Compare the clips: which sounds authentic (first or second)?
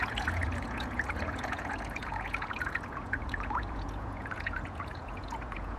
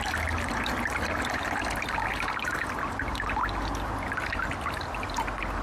second